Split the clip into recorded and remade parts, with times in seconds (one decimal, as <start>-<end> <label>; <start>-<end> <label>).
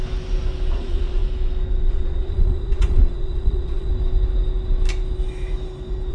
0.0-0.7 recorded; 0.7-1.2 remade; 1.2-1.9 recorded; 1.9-3.9 remade; 3.9-6.1 recorded